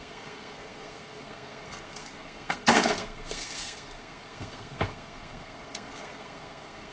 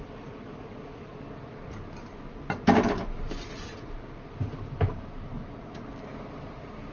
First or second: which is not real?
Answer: first